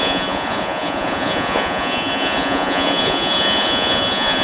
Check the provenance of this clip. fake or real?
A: fake